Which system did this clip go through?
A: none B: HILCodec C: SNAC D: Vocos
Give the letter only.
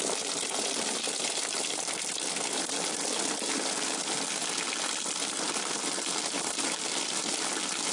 A